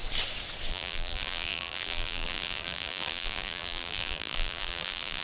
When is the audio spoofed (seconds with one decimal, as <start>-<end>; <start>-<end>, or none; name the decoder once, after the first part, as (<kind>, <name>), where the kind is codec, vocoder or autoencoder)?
0.7-5.2 (vocoder, BigVGAN v2)